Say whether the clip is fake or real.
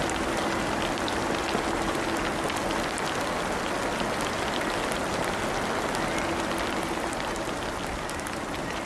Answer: real